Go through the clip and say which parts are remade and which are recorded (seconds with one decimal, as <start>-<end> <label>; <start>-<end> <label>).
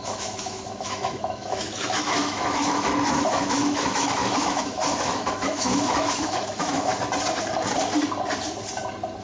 0.0-6.9 remade; 6.9-9.2 recorded